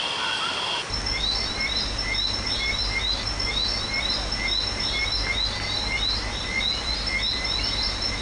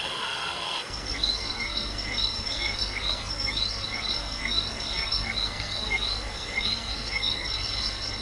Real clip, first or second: first